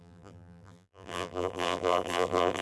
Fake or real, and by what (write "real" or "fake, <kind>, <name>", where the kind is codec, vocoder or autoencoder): fake, vocoder, BigVGAN v2